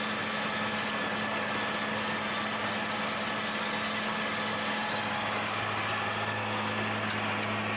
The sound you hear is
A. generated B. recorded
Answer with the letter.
B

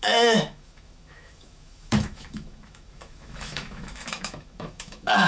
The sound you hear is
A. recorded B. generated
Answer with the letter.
B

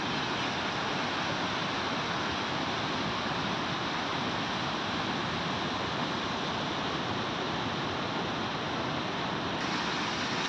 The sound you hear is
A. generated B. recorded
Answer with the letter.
B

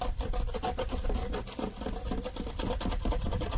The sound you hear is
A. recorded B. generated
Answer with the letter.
A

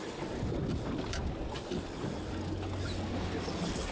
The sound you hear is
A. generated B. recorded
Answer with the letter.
B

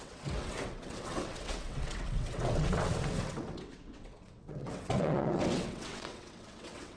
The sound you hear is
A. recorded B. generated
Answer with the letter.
B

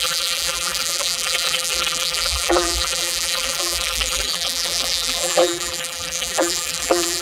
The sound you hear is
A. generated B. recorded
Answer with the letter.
A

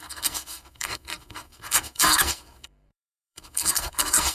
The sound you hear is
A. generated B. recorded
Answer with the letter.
A